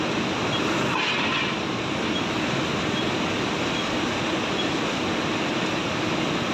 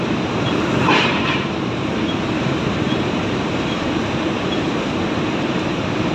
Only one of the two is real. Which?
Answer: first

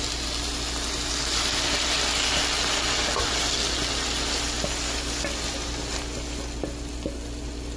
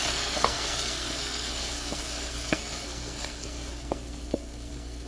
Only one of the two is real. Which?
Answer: first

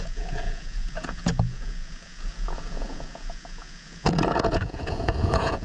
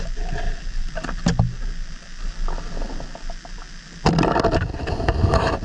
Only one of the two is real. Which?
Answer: second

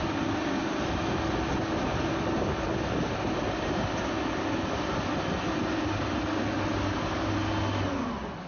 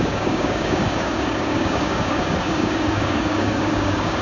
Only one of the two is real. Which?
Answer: first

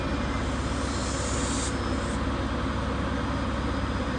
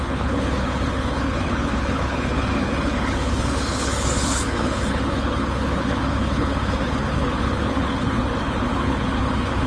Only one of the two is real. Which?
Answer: first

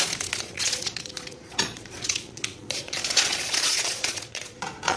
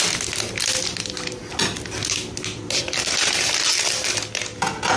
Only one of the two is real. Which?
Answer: second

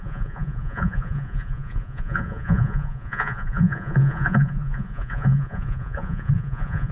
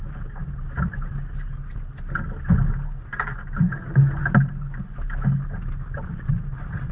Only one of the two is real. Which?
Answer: second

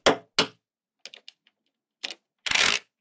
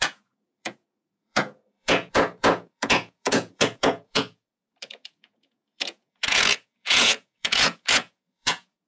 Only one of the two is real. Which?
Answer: first